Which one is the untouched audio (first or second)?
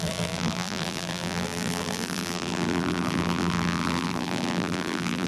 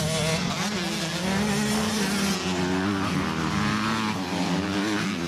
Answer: second